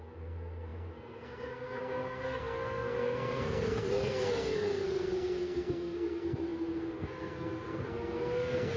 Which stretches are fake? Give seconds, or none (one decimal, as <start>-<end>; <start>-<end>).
0.0-8.8